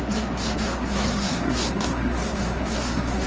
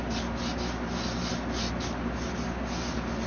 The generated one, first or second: first